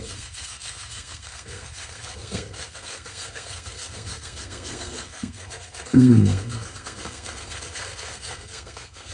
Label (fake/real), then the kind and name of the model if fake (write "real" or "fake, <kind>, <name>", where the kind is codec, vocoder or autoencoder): fake, codec, SNAC